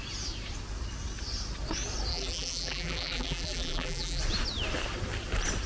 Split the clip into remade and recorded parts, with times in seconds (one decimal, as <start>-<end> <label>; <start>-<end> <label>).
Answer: 0.0-2.1 recorded; 2.1-4.2 remade; 4.2-5.7 recorded

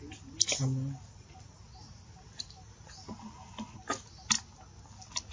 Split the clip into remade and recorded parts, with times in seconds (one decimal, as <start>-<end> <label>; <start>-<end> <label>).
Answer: 0.0-5.3 recorded

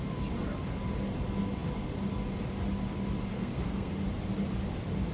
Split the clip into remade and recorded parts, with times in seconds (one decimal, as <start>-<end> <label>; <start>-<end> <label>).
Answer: 0.0-3.3 recorded; 3.3-3.9 remade; 3.9-5.1 recorded

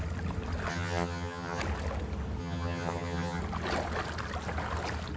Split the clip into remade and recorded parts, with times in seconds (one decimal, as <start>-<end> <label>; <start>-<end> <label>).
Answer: 0.0-0.7 recorded; 0.7-1.6 remade; 1.6-2.4 recorded; 2.4-3.4 remade; 3.4-5.2 recorded

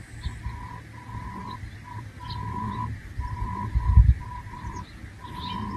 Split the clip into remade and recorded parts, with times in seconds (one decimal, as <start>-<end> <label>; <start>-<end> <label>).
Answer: 0.0-1.4 recorded; 1.4-4.9 remade; 4.9-5.8 recorded

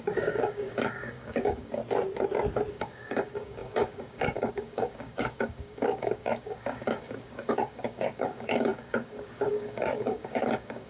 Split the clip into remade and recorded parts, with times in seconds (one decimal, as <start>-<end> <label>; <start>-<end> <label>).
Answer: 0.0-1.8 remade; 1.8-2.7 recorded; 2.7-10.9 remade